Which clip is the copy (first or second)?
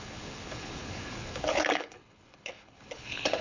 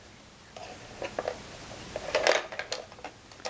first